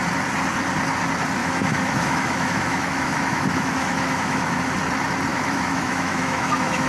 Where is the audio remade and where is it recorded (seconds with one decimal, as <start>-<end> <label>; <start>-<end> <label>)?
0.0-1.4 recorded; 1.4-4.6 remade; 4.6-5.3 recorded; 5.3-6.9 remade